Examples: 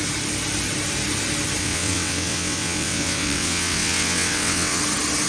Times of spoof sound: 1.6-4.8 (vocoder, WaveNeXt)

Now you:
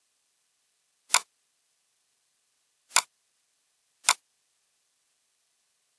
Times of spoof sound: none

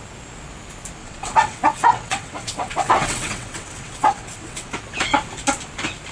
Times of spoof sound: 1.0-4.7 (vocoder, WaveNeXt)